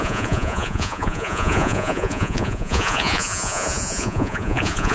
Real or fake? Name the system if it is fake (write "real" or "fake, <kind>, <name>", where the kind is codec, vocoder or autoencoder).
fake, vocoder, Vocos